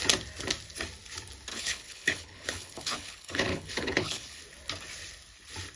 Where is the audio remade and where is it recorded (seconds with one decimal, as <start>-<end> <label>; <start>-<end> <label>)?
0.0-1.5 recorded; 1.5-4.4 remade; 4.4-5.8 recorded